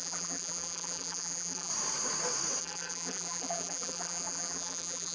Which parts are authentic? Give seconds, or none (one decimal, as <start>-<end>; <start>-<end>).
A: 1.7-2.6